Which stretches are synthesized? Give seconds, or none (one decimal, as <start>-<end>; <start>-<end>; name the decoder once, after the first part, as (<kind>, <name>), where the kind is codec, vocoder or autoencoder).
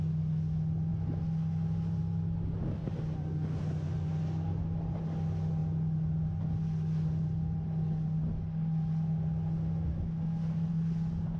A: none